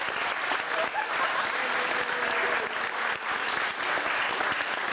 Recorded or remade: recorded